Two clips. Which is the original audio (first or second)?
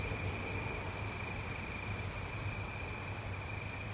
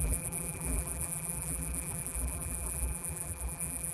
first